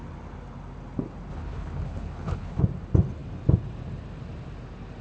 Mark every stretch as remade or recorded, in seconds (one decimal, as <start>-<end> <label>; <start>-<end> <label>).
0.0-1.3 recorded; 1.3-2.6 remade; 2.6-5.0 recorded